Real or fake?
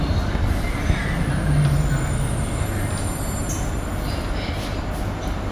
real